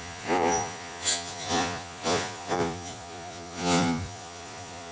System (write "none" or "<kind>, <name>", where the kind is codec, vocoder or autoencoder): vocoder, Vocos